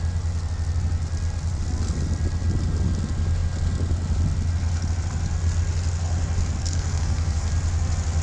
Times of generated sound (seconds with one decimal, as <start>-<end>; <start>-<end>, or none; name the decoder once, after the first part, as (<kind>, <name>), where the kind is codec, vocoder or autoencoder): 6.6-7.5 (codec, SNAC)